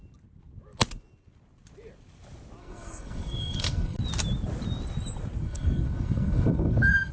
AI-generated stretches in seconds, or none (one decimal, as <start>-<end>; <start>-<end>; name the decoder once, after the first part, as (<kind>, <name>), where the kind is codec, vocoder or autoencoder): 2.6-4.0 (codec, SNAC); 5.4-7.1